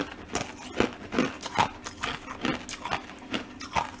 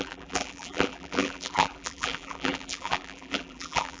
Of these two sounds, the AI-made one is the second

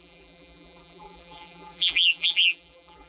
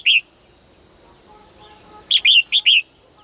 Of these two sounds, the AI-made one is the first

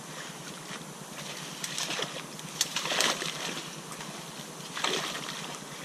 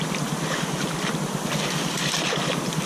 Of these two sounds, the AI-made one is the second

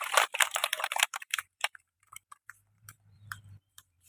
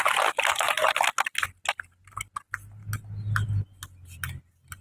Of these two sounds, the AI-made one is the first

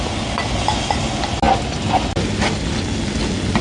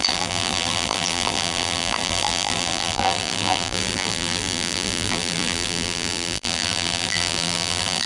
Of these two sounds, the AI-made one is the second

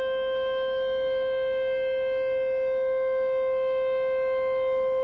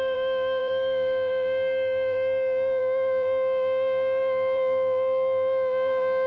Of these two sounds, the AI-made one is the second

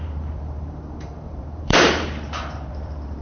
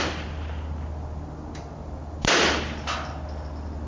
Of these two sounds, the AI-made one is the first